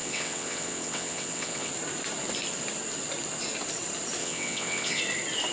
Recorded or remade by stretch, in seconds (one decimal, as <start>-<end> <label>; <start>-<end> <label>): 0.0-1.7 remade; 1.7-4.2 recorded; 4.2-5.0 remade; 5.0-5.5 recorded